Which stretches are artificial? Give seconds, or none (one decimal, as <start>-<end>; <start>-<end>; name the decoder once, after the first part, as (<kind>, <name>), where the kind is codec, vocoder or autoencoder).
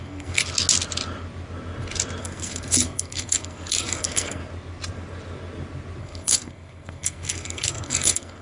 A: 0.0-0.4 (codec, SNAC); 2.2-4.4; 6.0-8.4